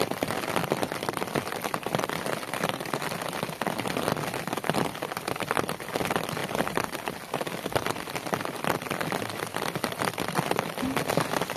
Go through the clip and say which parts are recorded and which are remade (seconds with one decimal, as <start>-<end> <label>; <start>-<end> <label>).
0.0-11.6 recorded